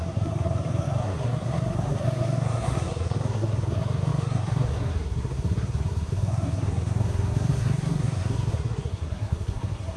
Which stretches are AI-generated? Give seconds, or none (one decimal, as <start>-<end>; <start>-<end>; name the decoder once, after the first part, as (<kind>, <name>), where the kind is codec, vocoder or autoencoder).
0.0-10.0 (codec, SNAC)